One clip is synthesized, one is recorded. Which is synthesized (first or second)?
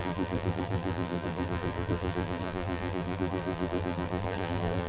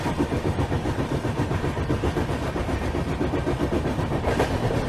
first